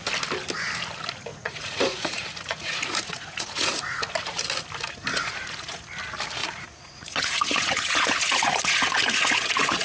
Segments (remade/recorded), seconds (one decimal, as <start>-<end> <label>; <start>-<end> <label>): 0.0-1.3 recorded; 1.3-4.1 remade; 4.1-5.2 recorded; 5.2-5.8 remade; 5.8-6.4 recorded; 6.4-9.8 remade